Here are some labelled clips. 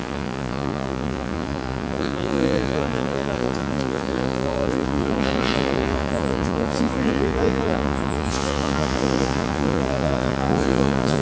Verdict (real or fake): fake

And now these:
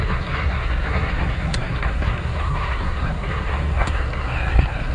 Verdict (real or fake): fake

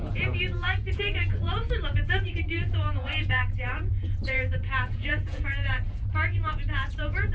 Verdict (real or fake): fake